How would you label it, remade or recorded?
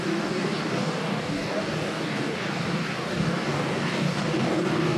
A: remade